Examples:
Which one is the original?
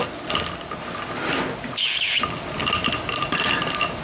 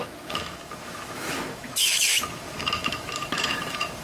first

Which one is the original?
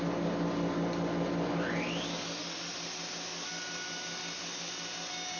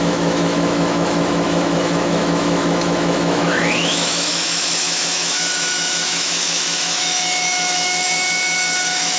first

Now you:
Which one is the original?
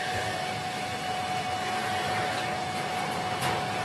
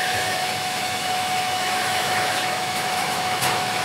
first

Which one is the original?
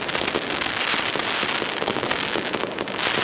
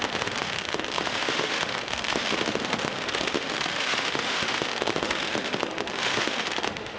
first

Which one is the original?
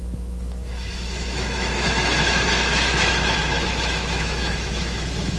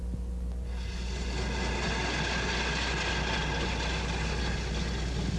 second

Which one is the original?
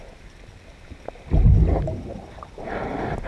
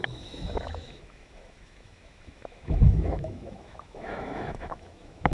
first